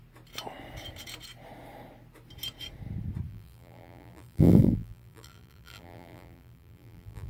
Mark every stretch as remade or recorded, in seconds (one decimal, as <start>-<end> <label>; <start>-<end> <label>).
0.0-3.3 recorded; 3.3-7.3 remade